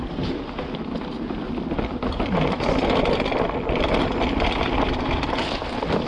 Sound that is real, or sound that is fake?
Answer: real